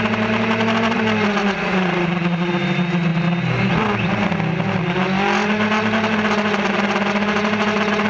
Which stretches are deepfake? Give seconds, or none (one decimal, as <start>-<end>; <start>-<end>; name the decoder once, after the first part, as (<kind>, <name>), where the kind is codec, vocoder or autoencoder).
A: 1.4-2.5 (vocoder, Vocos)